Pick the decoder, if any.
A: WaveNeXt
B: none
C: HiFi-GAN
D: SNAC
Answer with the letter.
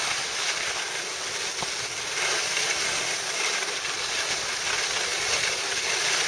B